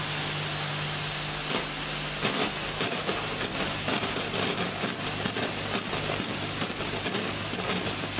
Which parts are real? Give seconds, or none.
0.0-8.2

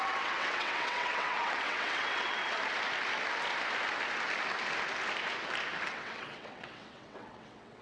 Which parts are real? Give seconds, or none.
2.4-5.9

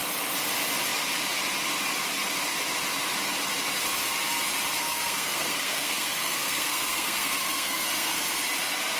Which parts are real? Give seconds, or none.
0.0-4.8; 8.2-9.0